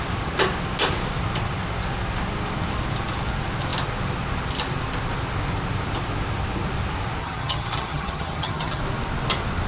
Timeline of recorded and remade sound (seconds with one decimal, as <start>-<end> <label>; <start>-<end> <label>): 0.0-7.2 recorded; 7.2-8.8 remade; 8.8-9.7 recorded